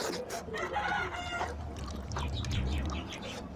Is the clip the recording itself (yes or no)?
yes